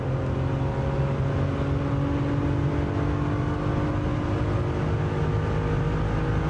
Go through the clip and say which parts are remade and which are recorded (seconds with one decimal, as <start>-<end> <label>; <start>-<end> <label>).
0.0-6.5 recorded